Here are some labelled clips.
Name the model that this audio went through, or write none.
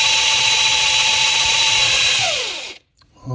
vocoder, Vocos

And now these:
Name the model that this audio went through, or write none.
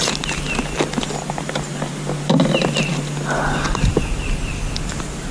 none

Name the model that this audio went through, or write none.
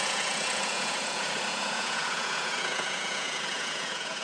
vocoder, Vocos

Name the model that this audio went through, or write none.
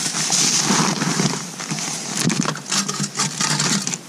none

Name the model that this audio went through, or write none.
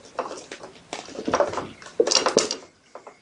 none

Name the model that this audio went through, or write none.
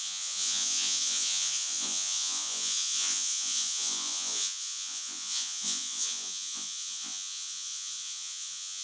vocoder, Vocos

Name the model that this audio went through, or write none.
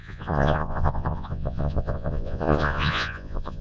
vocoder, Vocos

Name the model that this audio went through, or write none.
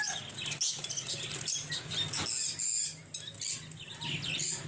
none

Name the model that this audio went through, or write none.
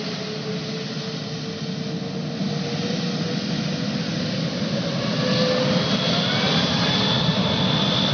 none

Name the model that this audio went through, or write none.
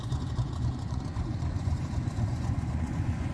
vocoder, Vocos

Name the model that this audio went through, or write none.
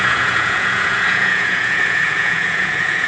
vocoder, Vocos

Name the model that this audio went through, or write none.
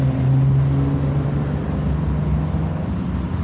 none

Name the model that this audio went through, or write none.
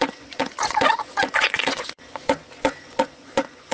vocoder, Vocos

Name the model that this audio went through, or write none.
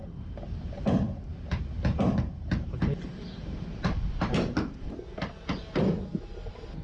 none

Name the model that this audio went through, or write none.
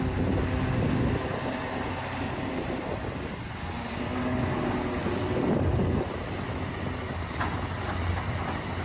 none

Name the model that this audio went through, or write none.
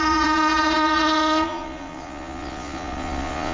vocoder, Vocos